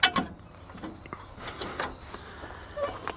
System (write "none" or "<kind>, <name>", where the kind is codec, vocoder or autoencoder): none